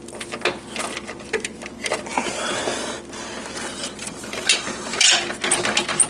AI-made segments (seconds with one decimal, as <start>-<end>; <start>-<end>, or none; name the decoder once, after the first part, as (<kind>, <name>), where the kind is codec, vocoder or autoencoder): none